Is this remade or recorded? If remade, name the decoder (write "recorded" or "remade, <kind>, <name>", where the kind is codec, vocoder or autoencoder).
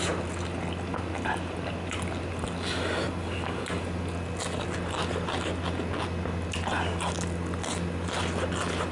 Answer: recorded